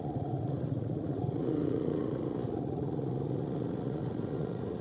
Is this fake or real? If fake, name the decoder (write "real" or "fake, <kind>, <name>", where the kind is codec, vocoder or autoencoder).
fake, vocoder, Vocos